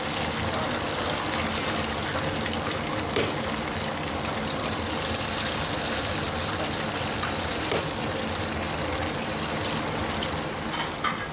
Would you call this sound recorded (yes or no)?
yes